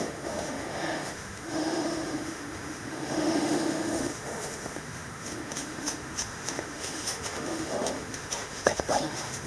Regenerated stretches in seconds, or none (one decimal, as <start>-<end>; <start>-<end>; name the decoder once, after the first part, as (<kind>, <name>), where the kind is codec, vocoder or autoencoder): 0.0-9.5 (autoencoder, DAC-VAE)